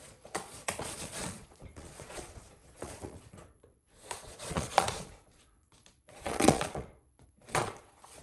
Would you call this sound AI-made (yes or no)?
yes